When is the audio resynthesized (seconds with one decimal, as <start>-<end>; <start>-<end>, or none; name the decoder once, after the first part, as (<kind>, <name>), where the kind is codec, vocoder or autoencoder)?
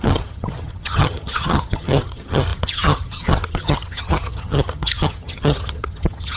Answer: 0.0-6.4 (vocoder, HiFi-GAN)